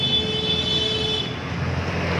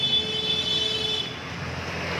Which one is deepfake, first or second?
second